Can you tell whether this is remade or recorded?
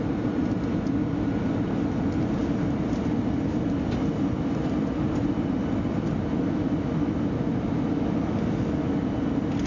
recorded